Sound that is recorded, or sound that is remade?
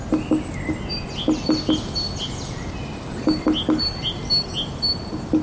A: recorded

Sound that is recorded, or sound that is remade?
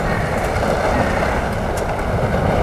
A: recorded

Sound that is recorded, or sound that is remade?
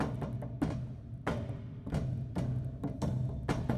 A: recorded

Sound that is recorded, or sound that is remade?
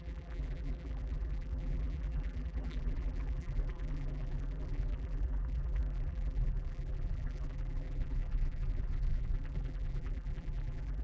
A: remade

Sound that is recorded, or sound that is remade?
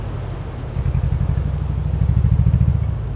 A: recorded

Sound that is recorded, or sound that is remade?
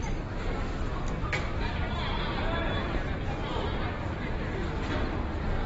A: recorded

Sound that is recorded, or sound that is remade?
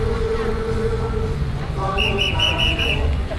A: remade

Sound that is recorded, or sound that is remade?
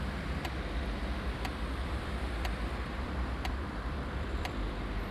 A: remade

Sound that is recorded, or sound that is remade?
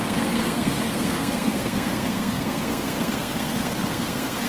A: remade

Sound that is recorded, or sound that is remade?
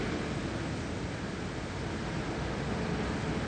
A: recorded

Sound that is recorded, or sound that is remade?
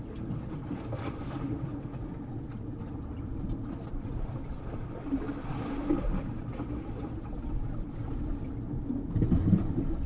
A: recorded